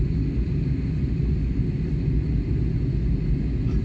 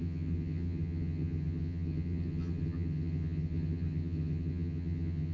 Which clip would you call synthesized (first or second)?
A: second